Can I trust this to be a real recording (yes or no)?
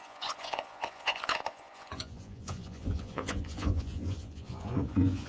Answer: no